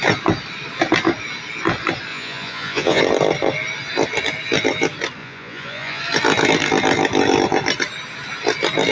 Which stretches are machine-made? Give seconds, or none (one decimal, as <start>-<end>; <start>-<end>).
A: 2.1-3.0; 5.2-6.0